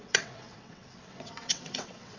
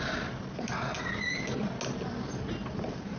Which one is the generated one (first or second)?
first